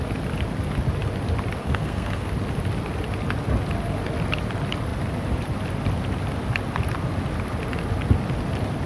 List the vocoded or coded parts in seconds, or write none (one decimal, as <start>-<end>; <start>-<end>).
1.6-2.3